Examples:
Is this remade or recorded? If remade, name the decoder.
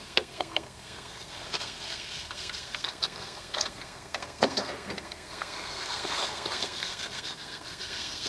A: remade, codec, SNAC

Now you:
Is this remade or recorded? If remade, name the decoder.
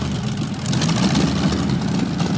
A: recorded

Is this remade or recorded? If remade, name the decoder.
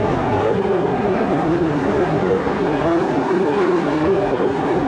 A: remade, codec, SNAC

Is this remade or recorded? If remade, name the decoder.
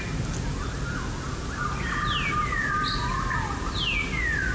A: recorded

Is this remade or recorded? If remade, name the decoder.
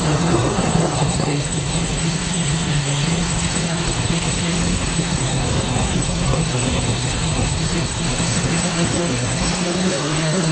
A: remade, codec, SNAC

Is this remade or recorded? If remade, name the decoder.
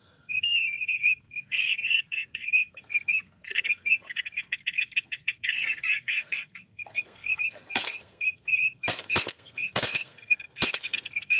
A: remade, codec, SNAC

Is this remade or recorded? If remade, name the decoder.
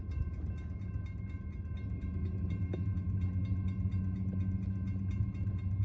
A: recorded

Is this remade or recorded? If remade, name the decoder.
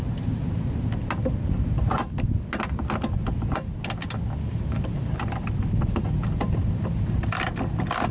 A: recorded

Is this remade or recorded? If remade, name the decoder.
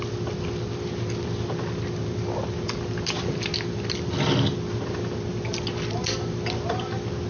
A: recorded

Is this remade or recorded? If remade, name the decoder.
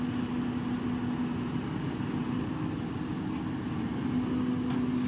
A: recorded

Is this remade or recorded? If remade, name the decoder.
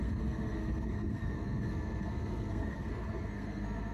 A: remade, codec, SNAC